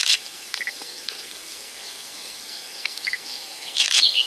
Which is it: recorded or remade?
remade